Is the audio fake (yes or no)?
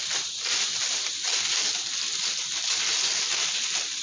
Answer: no